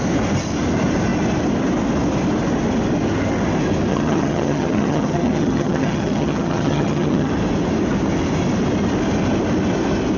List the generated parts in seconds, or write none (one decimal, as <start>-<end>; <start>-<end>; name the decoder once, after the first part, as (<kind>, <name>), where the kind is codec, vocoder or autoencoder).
3.9-7.3 (vocoder, HiFi-GAN)